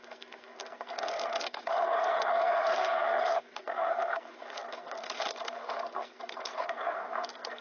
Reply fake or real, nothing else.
fake